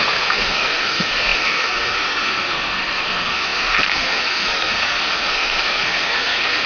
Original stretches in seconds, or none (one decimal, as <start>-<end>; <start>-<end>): none